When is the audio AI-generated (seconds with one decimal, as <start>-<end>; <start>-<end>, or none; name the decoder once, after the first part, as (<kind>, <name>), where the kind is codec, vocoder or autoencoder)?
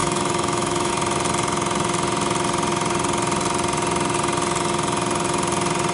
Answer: 0.0-0.9 (autoencoder, DAC-VAE)